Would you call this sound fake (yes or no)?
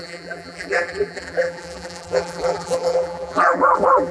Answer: yes